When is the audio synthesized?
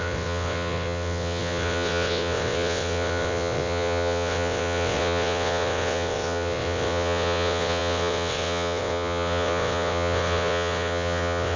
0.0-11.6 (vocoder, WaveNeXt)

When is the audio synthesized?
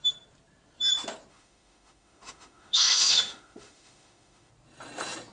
1.3-4.5 (autoencoder, DAC-VAE)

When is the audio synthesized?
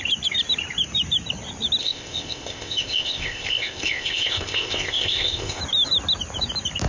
1.8-5.6 (codec, ZipCodec)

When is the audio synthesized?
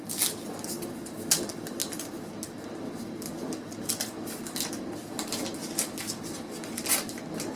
none